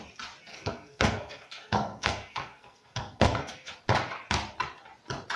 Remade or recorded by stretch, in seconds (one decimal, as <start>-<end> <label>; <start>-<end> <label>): 0.0-0.5 recorded; 0.5-3.7 remade; 3.7-5.4 recorded